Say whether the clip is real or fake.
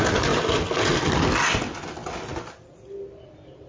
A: fake